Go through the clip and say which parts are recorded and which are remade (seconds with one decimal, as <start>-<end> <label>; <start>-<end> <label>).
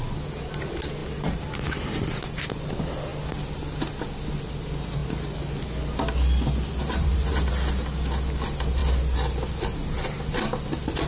0.0-11.1 recorded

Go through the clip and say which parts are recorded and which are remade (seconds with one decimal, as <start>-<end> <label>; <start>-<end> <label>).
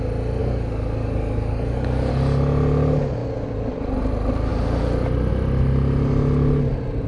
0.0-0.4 recorded; 0.4-2.1 remade; 2.1-7.1 recorded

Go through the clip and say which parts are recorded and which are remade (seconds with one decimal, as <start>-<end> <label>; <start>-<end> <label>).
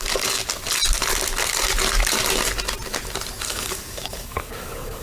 0.0-0.4 remade; 0.4-3.4 recorded; 3.4-5.0 remade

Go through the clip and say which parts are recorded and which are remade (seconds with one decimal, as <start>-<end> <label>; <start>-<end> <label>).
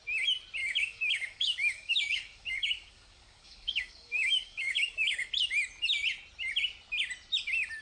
0.0-0.6 recorded; 0.6-5.3 remade; 5.3-7.8 recorded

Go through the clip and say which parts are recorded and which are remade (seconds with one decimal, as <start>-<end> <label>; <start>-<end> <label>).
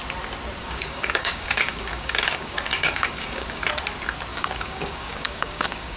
0.0-0.6 recorded; 0.6-3.6 remade; 3.6-4.3 recorded; 4.3-6.0 remade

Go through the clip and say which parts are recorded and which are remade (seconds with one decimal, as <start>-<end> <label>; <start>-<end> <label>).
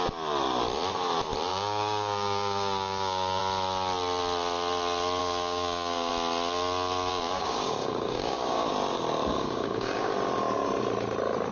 0.0-1.5 recorded; 1.5-3.4 remade; 3.4-5.2 recorded; 5.2-6.1 remade; 6.1-7.1 recorded; 7.1-8.7 remade; 8.7-9.3 recorded; 9.3-10.1 remade; 10.1-11.5 recorded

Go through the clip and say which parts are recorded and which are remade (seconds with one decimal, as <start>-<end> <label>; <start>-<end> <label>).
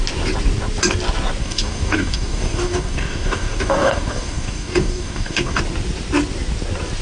0.0-1.4 recorded; 1.4-5.6 remade; 5.6-7.0 recorded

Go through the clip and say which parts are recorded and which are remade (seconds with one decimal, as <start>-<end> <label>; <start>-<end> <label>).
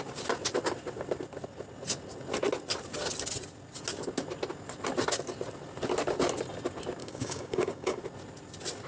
0.0-7.0 recorded; 7.0-8.0 remade; 8.0-8.9 recorded